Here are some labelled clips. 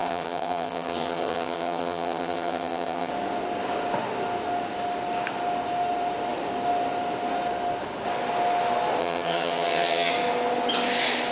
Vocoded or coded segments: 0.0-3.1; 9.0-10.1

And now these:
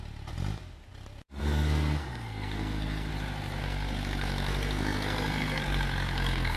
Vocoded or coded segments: 1.4-3.1; 3.6-6.6

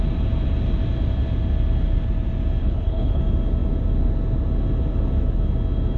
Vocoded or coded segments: 2.6-3.2

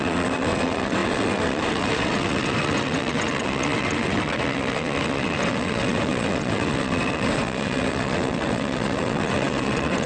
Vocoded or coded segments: 0.0-10.1

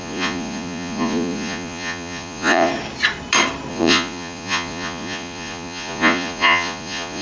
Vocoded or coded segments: 0.0-2.7; 3.7-7.2